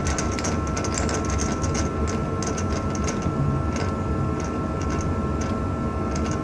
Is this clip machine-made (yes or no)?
no